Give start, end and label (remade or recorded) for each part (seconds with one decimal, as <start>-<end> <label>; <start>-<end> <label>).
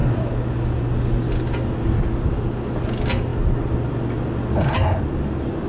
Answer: 0.0-5.7 recorded